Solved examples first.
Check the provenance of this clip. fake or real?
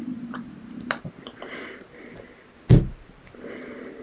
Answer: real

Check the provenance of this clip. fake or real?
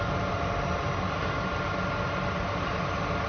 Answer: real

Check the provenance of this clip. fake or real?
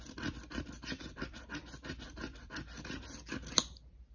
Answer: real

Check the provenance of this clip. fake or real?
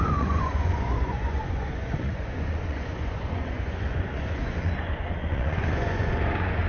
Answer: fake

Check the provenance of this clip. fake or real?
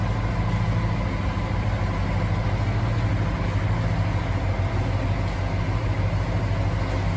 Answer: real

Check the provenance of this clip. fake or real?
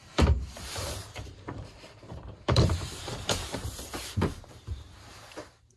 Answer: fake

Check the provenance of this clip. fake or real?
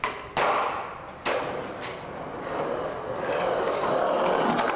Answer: real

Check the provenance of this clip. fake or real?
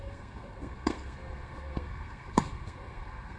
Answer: fake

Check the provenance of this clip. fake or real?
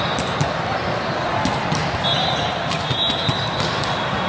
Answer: real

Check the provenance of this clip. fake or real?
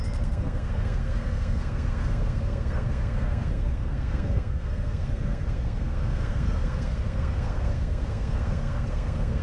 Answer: fake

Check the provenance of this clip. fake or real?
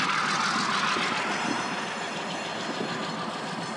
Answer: real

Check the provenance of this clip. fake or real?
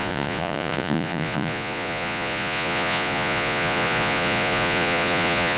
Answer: fake